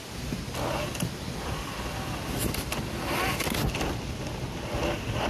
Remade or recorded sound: recorded